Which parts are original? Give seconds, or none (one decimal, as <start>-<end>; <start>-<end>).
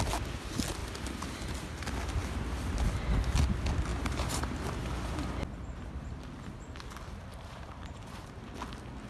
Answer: 0.0-3.9; 4.8-7.3; 8.4-9.1